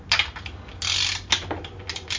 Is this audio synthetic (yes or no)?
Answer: no